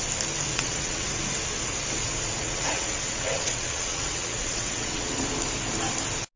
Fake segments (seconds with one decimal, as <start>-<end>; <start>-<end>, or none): 0.5-1.1; 2.4-5.2